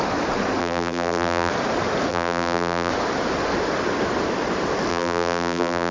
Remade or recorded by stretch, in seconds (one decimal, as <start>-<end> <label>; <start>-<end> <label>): 0.0-0.6 recorded; 0.6-1.5 remade; 1.5-2.1 recorded; 2.1-2.9 remade; 2.9-4.9 recorded; 4.9-5.9 remade